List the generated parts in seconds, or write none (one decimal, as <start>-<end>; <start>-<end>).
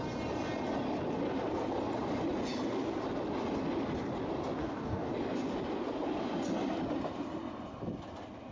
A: 4.6-5.1